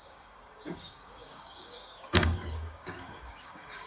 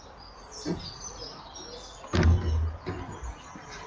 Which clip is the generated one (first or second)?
first